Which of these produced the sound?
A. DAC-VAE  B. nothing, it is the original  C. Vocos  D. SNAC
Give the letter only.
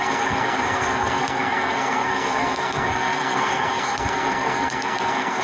D